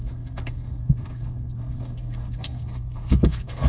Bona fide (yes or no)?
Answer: no